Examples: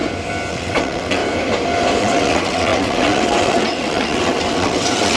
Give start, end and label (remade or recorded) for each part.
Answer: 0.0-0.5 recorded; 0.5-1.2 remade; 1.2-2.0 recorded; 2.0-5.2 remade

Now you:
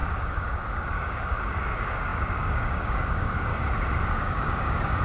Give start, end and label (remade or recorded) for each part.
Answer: 0.0-3.5 remade; 3.5-4.1 recorded; 4.1-5.0 remade